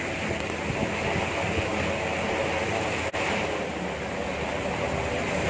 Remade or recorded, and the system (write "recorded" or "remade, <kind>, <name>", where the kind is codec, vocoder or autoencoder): recorded